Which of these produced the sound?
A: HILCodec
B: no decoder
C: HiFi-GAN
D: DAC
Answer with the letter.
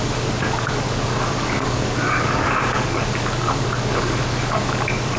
D